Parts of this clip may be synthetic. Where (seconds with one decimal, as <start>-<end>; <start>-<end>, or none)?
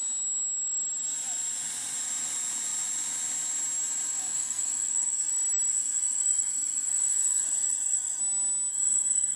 4.2-5.3; 5.7-8.2; 8.7-9.4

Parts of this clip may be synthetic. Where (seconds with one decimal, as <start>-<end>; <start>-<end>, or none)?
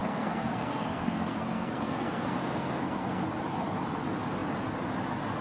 0.0-3.2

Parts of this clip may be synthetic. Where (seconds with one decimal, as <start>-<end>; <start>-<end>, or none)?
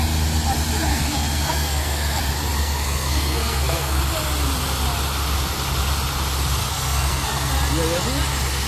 0.9-2.2; 2.6-4.0; 6.6-7.5